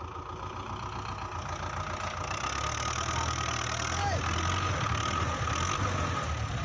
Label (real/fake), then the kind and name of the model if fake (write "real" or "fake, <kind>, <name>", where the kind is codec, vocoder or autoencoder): real